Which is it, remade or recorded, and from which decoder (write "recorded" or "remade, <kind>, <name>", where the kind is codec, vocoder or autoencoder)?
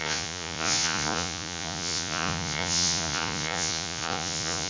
remade, vocoder, Vocos